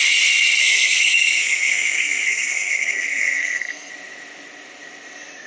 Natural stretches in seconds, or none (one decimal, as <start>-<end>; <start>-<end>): 0.0-0.6; 3.9-5.5